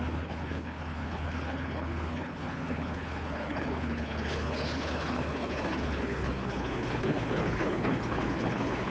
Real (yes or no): no